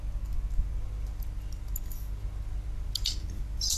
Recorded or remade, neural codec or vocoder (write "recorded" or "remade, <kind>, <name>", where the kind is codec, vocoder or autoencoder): recorded